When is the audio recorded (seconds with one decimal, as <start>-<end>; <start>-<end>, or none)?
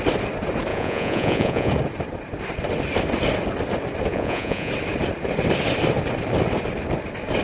0.0-0.7; 1.7-4.1; 4.7-7.4